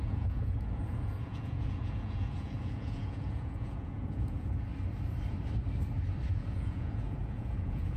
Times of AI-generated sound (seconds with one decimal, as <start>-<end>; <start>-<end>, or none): 0.0-4.7; 6.3-8.0